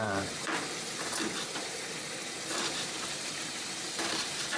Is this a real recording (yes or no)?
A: no